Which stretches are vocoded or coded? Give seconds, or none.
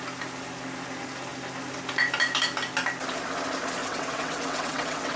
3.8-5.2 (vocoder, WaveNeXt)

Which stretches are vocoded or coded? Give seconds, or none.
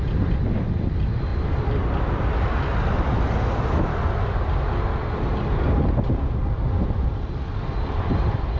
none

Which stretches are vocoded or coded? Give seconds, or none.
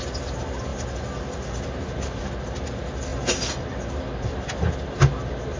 none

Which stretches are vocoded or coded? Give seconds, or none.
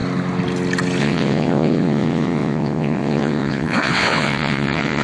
1.0-5.0 (vocoder, WaveNeXt)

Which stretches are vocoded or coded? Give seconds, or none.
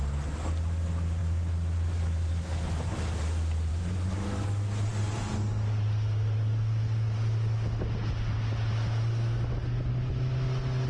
none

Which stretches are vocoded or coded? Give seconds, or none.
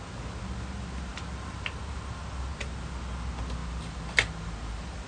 none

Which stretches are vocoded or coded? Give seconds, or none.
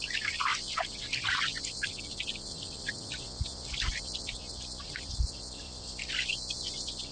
none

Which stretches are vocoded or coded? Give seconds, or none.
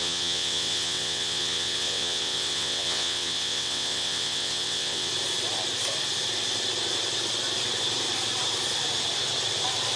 0.0-5.1 (vocoder, WaveNeXt)